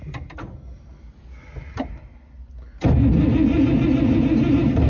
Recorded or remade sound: recorded